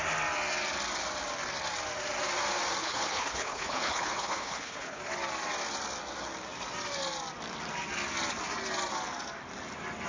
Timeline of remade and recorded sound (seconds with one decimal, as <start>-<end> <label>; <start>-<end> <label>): 0.0-2.8 recorded; 2.8-5.0 remade; 5.0-10.1 recorded